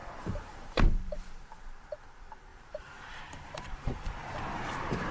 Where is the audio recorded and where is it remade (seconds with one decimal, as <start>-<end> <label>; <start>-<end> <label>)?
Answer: 0.0-5.1 remade